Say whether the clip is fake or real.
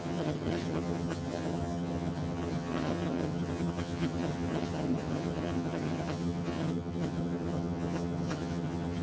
fake